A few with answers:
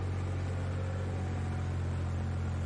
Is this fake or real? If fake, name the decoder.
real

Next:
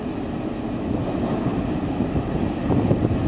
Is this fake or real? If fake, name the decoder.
real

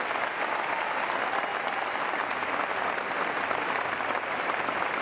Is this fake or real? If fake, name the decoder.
real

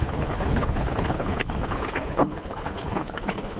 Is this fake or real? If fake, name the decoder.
fake, codec, HILCodec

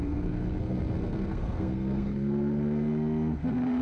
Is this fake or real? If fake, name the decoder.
fake, codec, SNAC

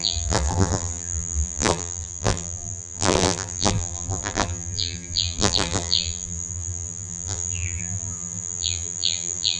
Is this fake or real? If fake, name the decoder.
fake, vocoder, BigVGAN v2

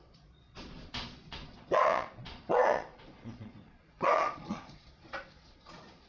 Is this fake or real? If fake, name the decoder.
fake, vocoder, Vocos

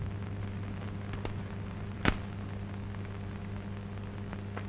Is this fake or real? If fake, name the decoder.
real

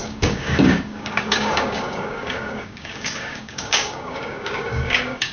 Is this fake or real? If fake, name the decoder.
fake, codec, DAC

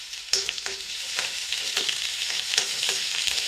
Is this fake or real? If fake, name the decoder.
fake, autoencoder, DAC-VAE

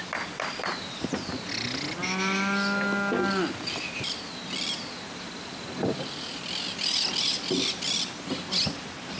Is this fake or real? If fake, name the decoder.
real